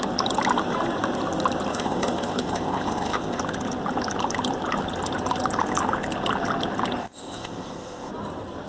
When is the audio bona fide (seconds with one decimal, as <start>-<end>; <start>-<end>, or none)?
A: 0.0-1.7; 3.4-7.0; 8.1-8.7